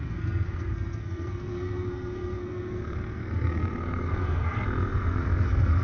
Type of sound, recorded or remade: remade